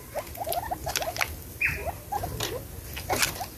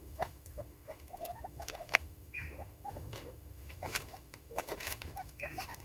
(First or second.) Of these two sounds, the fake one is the second